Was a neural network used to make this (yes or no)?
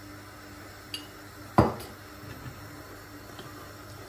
no